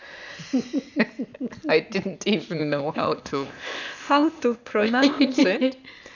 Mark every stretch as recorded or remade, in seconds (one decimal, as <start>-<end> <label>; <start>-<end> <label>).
0.0-2.6 recorded; 2.6-5.4 remade; 5.4-6.1 recorded